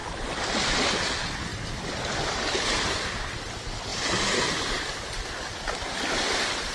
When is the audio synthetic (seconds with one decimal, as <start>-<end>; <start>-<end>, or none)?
none